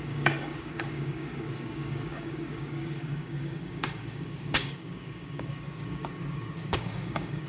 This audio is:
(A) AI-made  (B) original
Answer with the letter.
A